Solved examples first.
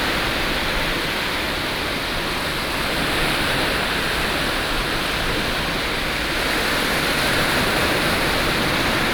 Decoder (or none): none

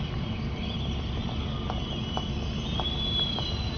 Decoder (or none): none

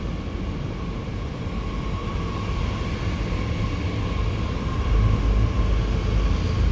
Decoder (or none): none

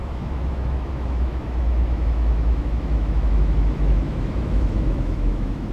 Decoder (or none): autoencoder, DAC-VAE